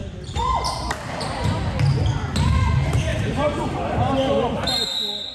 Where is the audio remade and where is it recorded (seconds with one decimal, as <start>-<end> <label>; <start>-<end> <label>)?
0.0-1.0 remade; 1.0-3.1 recorded; 3.1-3.6 remade; 3.6-5.3 recorded